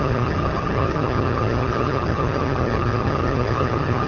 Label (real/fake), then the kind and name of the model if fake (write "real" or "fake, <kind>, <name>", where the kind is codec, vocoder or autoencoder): fake, vocoder, HiFi-GAN